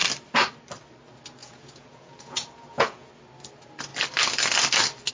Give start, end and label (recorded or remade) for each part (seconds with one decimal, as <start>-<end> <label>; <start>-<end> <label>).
0.0-1.4 recorded; 1.4-3.1 remade; 3.1-5.1 recorded

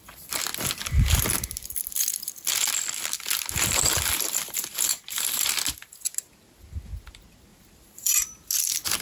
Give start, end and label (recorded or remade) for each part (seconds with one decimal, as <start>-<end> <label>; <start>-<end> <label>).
0.0-7.5 recorded; 7.5-8.5 remade; 8.5-9.0 recorded

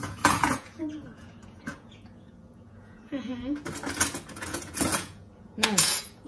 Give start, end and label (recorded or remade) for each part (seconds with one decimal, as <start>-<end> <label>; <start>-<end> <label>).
0.0-3.6 remade; 3.6-4.3 recorded; 4.3-6.3 remade

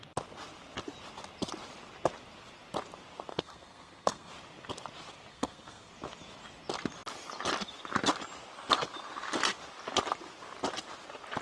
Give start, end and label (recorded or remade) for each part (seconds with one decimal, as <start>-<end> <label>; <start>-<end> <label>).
0.0-3.3 recorded; 3.3-4.3 remade; 4.3-5.3 recorded; 5.3-5.9 remade; 5.9-11.4 recorded

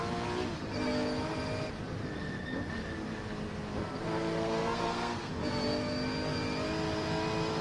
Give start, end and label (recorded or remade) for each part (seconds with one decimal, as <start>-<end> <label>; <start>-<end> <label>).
0.0-3.8 recorded; 3.8-5.3 remade; 5.3-7.6 recorded